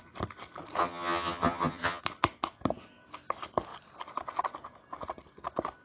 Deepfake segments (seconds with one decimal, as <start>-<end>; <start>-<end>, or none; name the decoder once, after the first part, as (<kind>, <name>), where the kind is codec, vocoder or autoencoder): 0.8-2.0 (vocoder, HiFi-GAN)